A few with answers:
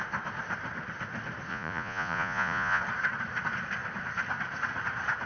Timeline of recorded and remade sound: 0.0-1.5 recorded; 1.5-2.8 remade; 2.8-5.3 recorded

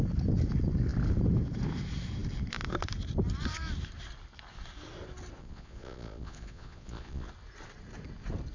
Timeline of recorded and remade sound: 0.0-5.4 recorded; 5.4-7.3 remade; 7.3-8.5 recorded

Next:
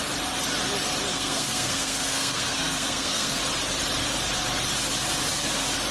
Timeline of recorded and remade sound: 0.0-1.1 recorded; 1.1-3.4 remade; 3.4-5.9 recorded

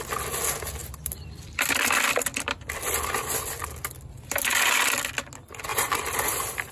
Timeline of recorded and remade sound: 0.0-0.8 recorded; 0.8-3.0 remade; 3.0-5.7 recorded; 5.7-6.7 remade